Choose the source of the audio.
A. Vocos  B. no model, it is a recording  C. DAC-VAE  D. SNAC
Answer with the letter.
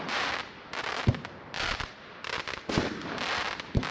B